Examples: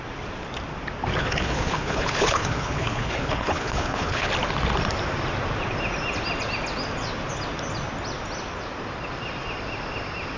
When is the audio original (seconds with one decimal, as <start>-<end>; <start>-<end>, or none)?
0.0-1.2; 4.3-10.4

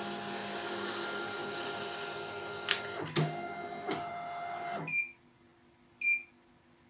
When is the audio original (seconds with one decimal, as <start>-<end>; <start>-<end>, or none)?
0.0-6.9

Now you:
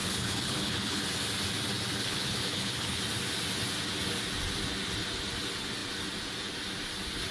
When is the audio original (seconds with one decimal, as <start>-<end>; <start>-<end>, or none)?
1.0-2.0; 3.0-7.3

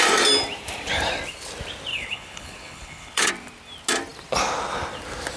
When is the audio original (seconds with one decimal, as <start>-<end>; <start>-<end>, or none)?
0.0-1.9; 3.3-5.4

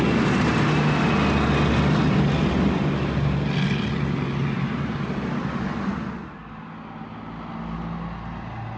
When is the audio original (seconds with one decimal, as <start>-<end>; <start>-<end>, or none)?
0.0-8.8